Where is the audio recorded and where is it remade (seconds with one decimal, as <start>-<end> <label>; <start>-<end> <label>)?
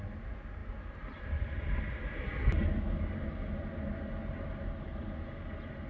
0.0-5.9 recorded